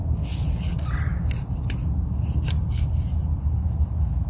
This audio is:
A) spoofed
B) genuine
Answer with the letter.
B